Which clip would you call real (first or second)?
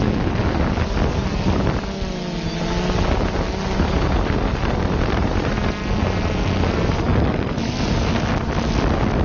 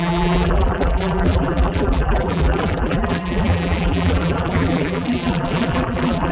first